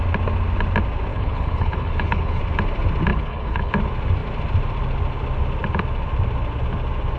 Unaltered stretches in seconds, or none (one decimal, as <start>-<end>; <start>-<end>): 0.0-1.1; 2.4-3.1; 3.7-7.2